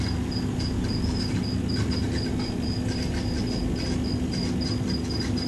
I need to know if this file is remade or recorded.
recorded